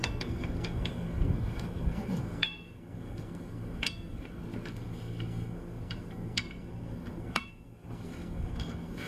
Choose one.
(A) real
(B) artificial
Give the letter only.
B